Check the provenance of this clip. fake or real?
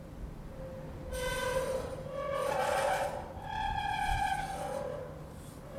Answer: real